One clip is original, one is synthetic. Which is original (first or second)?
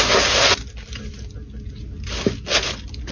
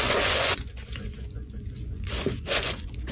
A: first